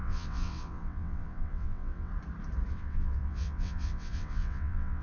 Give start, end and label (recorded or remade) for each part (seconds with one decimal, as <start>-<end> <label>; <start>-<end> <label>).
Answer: 0.0-2.1 remade; 2.1-2.7 recorded; 2.7-5.0 remade